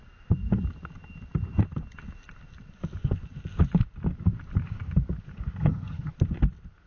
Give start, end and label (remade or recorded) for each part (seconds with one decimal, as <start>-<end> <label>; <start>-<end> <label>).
0.0-5.6 recorded; 5.6-6.1 remade; 6.1-6.9 recorded